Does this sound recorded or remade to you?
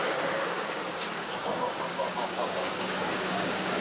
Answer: remade